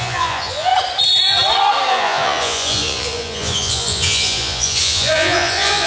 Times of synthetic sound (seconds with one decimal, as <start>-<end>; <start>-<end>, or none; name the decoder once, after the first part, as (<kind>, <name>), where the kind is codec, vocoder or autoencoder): 0.0-0.7 (vocoder, Vocos); 1.9-5.9

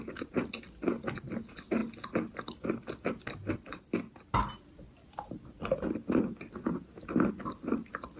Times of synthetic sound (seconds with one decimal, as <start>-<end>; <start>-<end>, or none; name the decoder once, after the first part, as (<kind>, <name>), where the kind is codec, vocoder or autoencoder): none

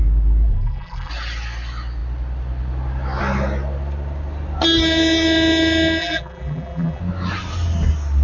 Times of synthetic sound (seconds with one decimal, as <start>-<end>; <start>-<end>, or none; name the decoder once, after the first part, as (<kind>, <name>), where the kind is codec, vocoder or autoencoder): 0.5-1.1 (vocoder, BigVGAN v2); 6.0-7.0

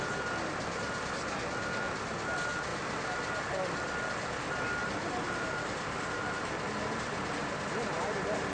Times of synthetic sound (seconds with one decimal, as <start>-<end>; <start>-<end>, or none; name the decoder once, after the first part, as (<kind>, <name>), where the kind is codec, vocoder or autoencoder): 4.8-6.8 (vocoder, BigVGAN v2)